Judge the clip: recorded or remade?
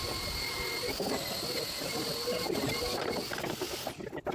remade